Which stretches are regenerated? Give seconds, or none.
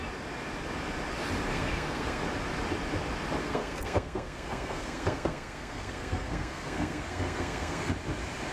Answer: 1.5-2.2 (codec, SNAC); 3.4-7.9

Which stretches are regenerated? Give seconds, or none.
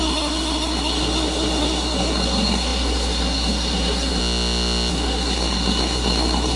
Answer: 0.0-4.2 (codec, SNAC); 4.9-6.6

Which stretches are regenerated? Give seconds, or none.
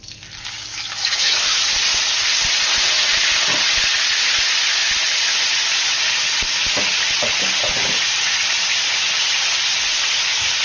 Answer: 0.7-1.6 (autoencoder, DAC-VAE)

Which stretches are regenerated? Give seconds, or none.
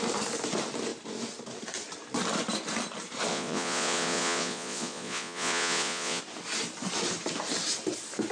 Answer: 3.3-6.2 (vocoder, Vocos)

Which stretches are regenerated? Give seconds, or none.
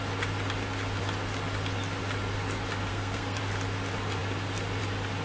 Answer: 2.9-3.4 (codec, SNAC)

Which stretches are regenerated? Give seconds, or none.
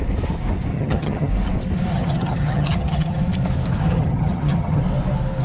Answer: 0.7-1.3 (vocoder, HiFi-GAN); 1.9-3.2; 3.8-4.8